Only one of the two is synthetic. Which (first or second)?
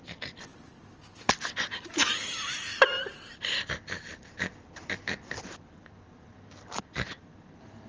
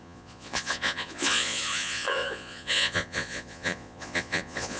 second